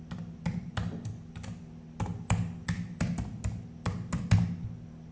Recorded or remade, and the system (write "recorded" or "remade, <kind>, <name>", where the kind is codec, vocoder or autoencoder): recorded